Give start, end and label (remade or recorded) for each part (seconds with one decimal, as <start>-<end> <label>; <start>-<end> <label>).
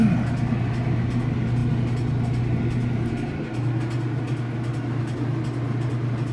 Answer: 0.0-6.3 recorded